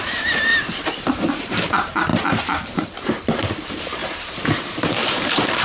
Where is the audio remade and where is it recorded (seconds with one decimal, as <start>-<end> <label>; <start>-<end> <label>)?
0.0-0.5 remade; 0.5-1.3 recorded; 1.3-2.1 remade; 2.1-2.7 recorded; 2.7-5.6 remade